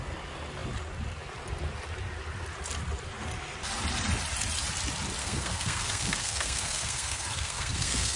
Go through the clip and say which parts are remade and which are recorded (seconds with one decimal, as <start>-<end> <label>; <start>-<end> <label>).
0.0-5.2 recorded; 5.2-8.2 remade